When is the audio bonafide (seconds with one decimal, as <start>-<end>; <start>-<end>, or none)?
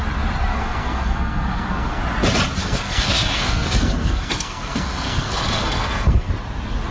0.0-0.5; 2.0-2.6; 6.3-6.9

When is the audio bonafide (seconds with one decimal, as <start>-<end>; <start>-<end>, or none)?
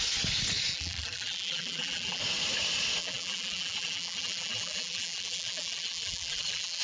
0.0-0.7; 2.2-3.0